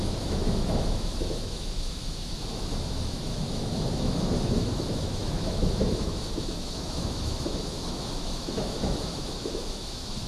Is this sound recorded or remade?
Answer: remade